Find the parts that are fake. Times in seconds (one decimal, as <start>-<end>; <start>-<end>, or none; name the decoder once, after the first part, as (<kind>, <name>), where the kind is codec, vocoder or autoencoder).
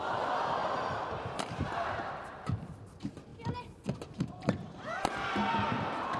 0.0-3.3 (vocoder, BigVGAN v2); 4.3-6.2